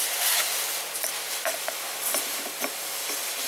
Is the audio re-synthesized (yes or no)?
no